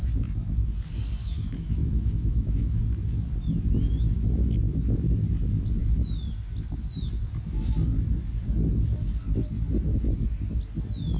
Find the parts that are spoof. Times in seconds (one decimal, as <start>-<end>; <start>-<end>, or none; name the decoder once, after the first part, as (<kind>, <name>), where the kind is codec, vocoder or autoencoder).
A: 1.2-2.8 (autoencoder, DAC-VAE)